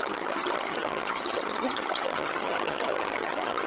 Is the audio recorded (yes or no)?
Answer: no